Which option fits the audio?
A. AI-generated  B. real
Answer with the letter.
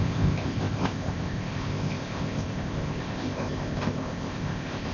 A